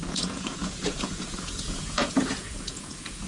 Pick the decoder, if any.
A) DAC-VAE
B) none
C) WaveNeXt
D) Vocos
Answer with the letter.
D